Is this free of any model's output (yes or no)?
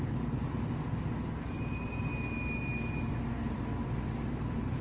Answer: yes